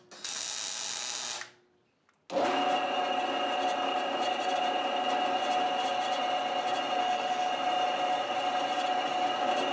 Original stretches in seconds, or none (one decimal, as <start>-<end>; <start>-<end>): 0.0-7.0; 7.5-9.7